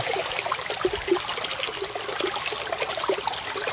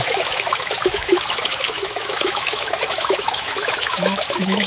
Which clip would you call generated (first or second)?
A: second